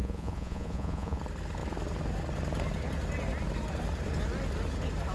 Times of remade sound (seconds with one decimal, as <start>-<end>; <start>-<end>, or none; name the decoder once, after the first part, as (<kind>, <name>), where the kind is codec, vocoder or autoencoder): 0.0-1.2 (vocoder, Vocos)